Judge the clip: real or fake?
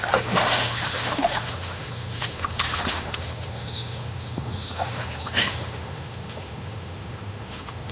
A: fake